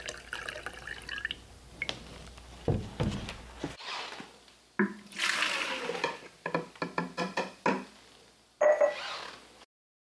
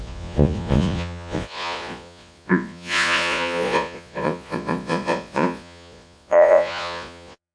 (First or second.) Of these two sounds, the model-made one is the second